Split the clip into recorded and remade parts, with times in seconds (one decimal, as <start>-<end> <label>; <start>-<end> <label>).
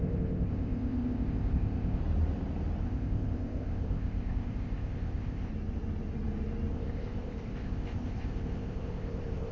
0.0-2.0 remade; 2.0-2.8 recorded; 2.8-5.5 remade; 5.5-6.7 recorded; 6.7-9.5 remade